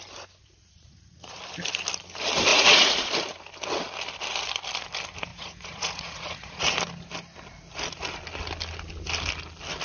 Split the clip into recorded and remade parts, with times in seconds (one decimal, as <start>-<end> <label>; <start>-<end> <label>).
0.0-0.4 recorded; 0.4-1.4 remade; 1.4-2.5 recorded; 2.5-3.1 remade; 3.1-5.3 recorded; 5.3-6.6 remade; 6.6-9.8 recorded